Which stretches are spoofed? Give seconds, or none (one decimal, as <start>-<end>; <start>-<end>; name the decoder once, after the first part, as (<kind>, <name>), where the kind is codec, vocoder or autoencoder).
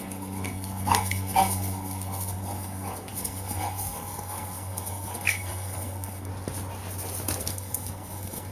0.0-6.3 (codec, SNAC); 7.4-8.5